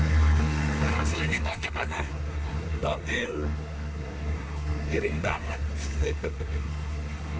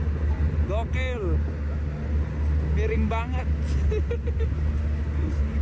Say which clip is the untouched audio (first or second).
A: second